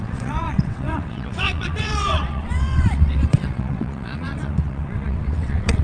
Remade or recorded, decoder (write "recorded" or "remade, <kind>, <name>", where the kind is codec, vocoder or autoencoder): remade, vocoder, WaveNeXt